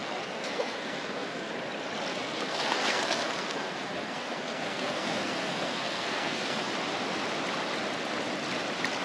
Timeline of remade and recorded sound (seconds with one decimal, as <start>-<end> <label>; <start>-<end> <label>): 0.0-1.5 remade; 1.5-2.1 recorded; 2.1-6.7 remade; 6.7-9.0 recorded